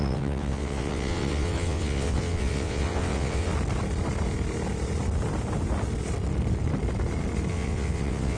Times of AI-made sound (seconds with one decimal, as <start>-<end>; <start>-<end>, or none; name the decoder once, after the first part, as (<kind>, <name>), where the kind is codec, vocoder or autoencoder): 0.0-3.5 (vocoder, WaveNeXt); 7.5-8.4

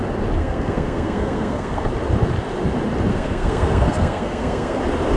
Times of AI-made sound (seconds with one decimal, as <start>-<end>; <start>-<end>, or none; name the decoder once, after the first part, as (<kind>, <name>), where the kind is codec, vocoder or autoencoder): 0.4-1.9 (codec, SNAC); 3.1-4.8

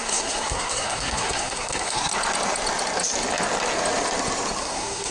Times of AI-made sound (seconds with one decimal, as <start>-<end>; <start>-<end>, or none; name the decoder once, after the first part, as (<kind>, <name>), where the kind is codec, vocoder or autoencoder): 0.0-2.1 (codec, SNAC); 4.6-5.1

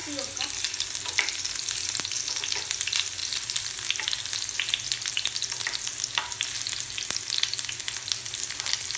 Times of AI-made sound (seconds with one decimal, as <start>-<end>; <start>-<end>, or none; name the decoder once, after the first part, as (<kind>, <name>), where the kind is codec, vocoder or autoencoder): none

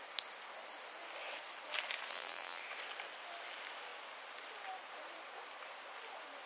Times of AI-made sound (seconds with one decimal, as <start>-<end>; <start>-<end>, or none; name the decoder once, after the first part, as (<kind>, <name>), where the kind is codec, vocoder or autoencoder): 2.1-2.6 (vocoder, BigVGAN v2)